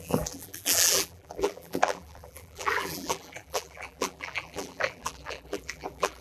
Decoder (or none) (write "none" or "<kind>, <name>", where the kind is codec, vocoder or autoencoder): vocoder, BigVGAN v2